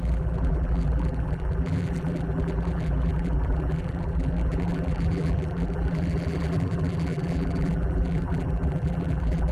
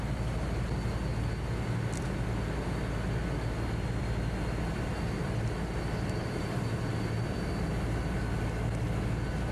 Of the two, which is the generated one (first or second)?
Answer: first